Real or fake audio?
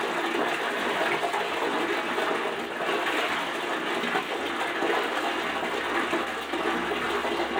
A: real